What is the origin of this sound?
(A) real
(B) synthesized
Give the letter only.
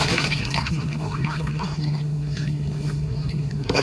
B